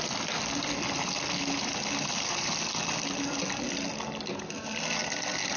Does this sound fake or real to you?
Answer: real